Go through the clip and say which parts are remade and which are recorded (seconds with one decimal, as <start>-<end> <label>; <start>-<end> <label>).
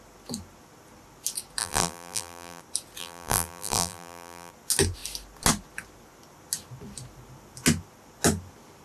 0.0-1.6 recorded; 1.6-2.6 remade; 2.6-3.0 recorded; 3.0-4.5 remade; 4.5-8.8 recorded